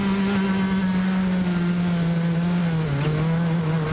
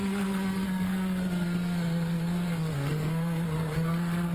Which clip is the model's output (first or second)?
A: second